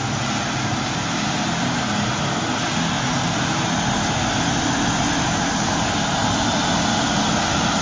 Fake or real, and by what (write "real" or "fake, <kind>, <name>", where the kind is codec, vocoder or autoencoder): real